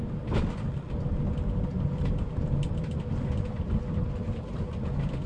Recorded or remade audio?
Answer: recorded